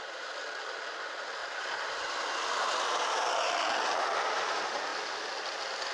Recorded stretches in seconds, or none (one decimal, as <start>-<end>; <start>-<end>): 0.0-5.9